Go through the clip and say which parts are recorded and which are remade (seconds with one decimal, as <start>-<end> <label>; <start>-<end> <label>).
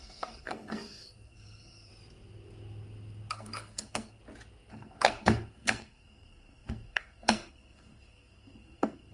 0.0-1.9 remade; 1.9-3.3 recorded; 3.3-4.2 remade; 4.2-4.7 recorded; 4.7-9.1 remade